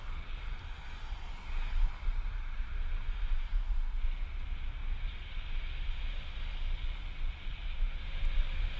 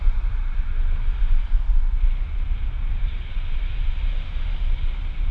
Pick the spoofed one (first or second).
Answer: second